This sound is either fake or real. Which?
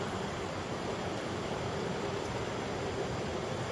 fake